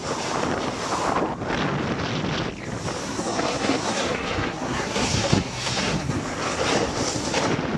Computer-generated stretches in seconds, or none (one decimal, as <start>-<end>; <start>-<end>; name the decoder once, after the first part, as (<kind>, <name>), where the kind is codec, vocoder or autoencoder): 3.0-6.2 (codec, SNAC)